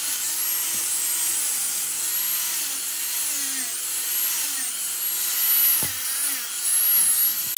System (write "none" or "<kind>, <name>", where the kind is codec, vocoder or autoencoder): none